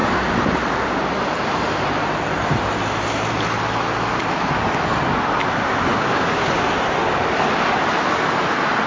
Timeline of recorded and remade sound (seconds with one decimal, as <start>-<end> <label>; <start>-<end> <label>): 0.0-5.9 recorded; 5.9-6.5 remade; 6.5-8.9 recorded